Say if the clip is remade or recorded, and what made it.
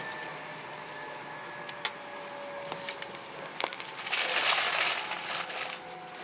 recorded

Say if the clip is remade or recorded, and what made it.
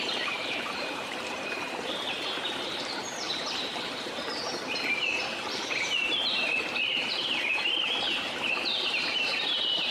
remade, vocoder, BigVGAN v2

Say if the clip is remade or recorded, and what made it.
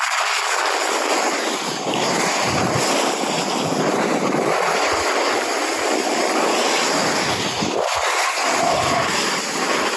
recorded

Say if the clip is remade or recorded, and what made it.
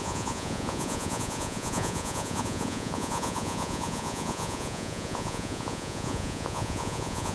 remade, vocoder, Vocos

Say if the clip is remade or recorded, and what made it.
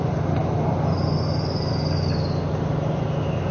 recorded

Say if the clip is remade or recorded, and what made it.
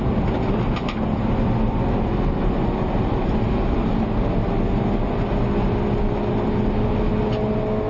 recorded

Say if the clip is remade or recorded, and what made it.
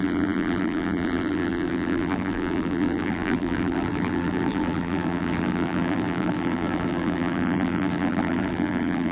remade, vocoder, BigVGAN v2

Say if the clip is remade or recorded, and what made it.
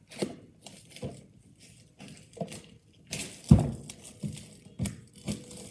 recorded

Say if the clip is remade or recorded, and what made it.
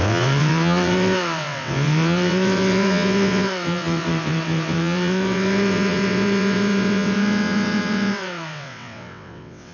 remade, vocoder, WaveNeXt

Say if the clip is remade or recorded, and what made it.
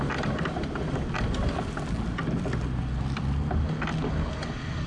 recorded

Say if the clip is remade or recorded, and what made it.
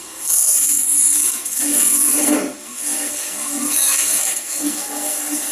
remade, codec, SNAC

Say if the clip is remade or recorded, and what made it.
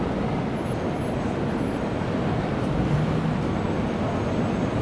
recorded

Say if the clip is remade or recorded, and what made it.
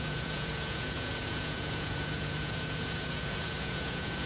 remade, vocoder, Vocos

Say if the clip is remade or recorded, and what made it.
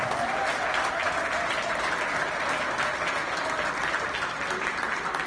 recorded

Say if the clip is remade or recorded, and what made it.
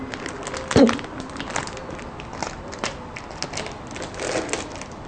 recorded